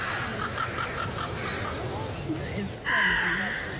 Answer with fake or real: real